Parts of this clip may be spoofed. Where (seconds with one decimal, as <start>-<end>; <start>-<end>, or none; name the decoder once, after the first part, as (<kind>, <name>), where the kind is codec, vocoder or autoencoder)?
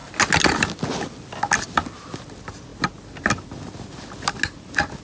none